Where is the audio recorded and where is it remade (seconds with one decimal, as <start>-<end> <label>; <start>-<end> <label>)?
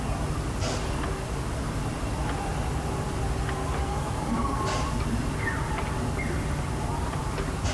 0.0-3.8 recorded; 3.8-4.6 remade; 4.6-7.7 recorded